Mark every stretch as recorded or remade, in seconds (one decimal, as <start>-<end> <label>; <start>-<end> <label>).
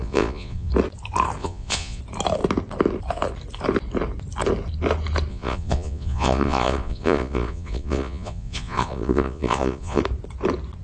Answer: 0.0-0.7 remade; 0.7-1.4 recorded; 1.4-2.0 remade; 2.0-5.3 recorded; 5.3-10.0 remade; 10.0-10.8 recorded